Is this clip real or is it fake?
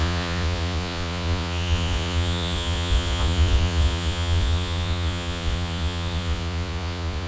fake